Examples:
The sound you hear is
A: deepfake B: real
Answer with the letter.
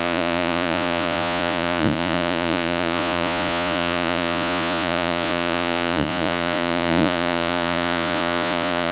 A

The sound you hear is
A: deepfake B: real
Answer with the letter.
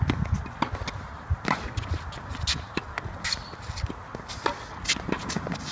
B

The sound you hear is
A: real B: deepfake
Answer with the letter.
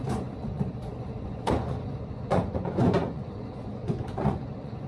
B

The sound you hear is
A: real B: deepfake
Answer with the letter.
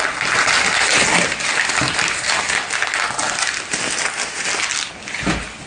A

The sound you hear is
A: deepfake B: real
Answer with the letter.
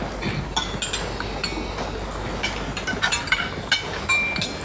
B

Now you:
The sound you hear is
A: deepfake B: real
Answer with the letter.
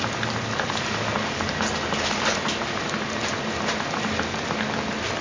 B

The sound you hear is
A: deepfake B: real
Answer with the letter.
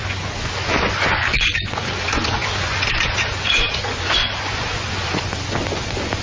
A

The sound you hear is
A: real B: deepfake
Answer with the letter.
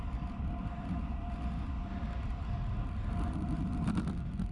A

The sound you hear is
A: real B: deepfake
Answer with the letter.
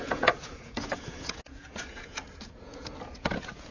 B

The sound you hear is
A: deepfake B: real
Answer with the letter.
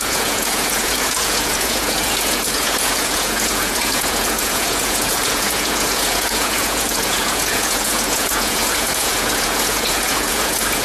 A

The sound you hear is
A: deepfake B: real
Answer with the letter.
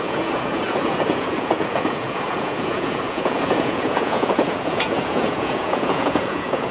A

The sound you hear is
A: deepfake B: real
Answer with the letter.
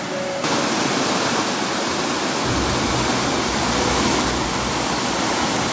B